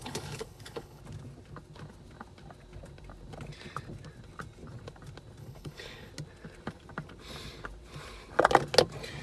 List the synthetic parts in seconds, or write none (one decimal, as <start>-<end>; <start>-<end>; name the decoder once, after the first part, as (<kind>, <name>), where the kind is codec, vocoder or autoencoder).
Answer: 0.0-1.0 (codec, HILCodec); 5.4-6.1